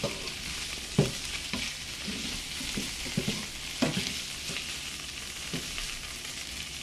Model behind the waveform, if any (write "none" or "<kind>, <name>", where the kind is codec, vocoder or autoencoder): none